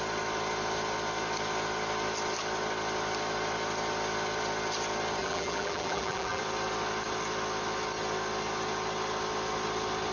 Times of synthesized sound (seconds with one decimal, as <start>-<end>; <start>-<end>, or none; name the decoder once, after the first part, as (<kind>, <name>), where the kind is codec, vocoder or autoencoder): 5.2-6.4 (vocoder, BigVGAN v2)